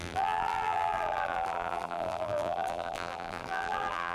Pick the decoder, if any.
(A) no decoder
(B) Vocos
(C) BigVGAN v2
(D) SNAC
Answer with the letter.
C